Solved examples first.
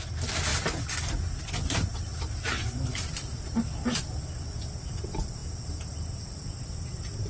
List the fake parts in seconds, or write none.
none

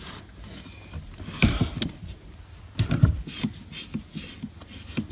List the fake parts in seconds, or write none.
none

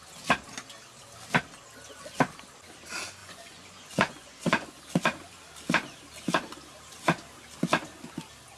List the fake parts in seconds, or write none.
3.2-4.7

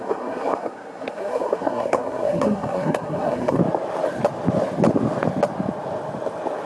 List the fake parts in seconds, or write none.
0.0-3.6